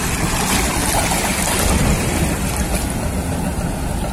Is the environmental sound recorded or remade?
recorded